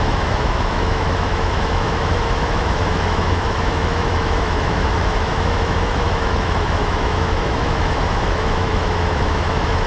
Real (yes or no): no